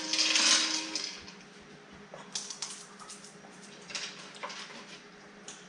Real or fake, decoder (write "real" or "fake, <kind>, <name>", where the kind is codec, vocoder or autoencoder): real